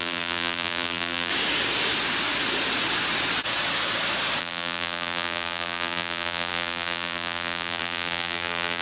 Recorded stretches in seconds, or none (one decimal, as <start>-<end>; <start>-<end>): 1.3-4.4